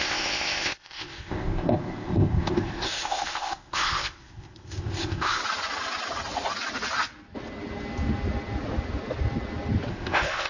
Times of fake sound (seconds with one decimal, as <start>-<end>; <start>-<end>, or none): 0.0-5.4; 9.9-10.5